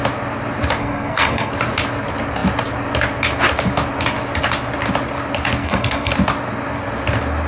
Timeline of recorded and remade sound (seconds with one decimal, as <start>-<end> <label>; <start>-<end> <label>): 0.0-0.8 recorded; 0.8-1.5 remade; 1.5-5.6 recorded; 5.6-6.1 remade; 6.1-7.5 recorded

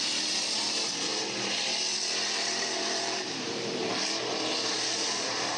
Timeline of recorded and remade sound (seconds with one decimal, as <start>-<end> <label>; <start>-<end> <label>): 0.0-5.6 remade

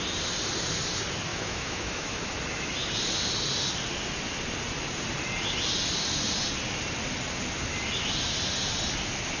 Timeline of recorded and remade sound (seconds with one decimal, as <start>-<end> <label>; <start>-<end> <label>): 0.0-1.3 recorded; 1.3-2.3 remade; 2.3-9.4 recorded

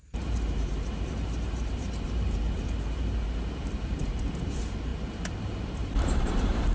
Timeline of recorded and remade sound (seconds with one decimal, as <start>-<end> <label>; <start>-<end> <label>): 0.0-6.7 remade